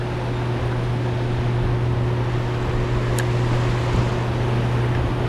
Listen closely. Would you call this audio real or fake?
real